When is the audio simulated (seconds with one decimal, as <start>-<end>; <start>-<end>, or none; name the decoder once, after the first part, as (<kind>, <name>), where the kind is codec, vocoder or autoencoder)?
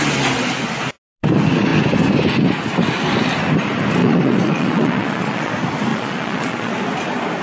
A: 4.0-5.5 (vocoder, Vocos); 5.9-6.7